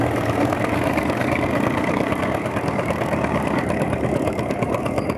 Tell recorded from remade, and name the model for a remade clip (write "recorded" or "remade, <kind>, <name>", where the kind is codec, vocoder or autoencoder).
remade, codec, DAC